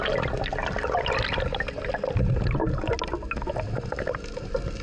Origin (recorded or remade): recorded